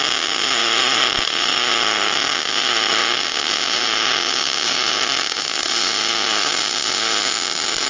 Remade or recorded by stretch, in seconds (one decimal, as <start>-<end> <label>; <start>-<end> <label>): 0.0-7.9 recorded